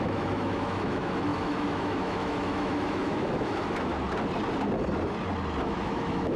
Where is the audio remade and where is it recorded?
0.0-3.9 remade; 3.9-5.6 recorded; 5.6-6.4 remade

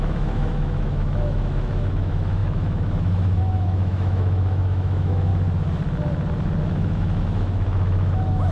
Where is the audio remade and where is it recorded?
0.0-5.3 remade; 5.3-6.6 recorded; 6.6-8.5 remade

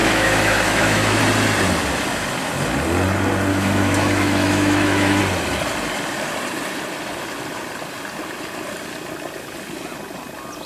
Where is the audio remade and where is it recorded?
0.0-1.2 remade; 1.2-3.5 recorded; 3.5-5.2 remade; 5.2-10.7 recorded